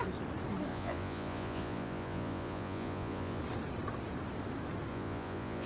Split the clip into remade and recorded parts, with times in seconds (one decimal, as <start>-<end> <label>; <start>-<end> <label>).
0.0-0.7 recorded; 0.7-3.4 remade; 3.4-4.9 recorded; 4.9-5.7 remade